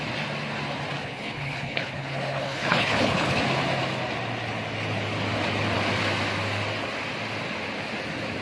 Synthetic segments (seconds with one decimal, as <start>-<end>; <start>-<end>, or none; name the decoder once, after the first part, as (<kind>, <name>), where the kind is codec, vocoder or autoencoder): 1.0-3.4 (codec, HILCodec)

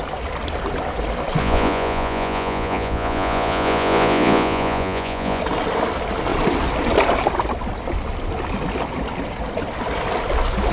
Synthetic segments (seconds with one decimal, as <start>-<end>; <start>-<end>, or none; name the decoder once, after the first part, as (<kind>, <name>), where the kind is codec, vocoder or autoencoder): 1.4-5.4 (vocoder, Vocos)

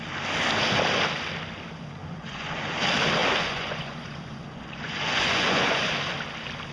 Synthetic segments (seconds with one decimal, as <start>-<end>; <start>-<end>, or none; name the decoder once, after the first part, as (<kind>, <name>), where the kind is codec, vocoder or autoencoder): 2.0-2.7 (vocoder, Vocos); 3.2-5.9

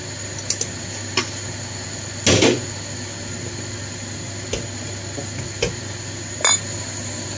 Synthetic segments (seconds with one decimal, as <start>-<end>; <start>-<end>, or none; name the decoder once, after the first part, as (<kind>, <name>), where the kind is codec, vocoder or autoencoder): none

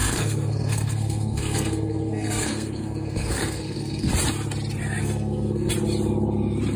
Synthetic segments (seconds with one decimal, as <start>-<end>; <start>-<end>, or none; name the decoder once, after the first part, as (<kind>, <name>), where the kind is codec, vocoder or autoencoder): 0.0-4.1 (codec, SNAC); 5.0-5.7

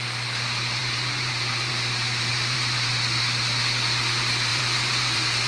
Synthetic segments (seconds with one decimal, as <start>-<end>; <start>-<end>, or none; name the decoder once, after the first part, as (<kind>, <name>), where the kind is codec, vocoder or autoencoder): 0.8-1.7 (vocoder, BigVGAN v2); 2.3-2.9; 4.5-5.5